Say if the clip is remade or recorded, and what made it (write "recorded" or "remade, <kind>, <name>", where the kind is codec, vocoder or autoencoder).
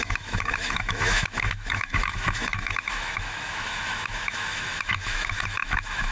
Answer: remade, autoencoder, DAC-VAE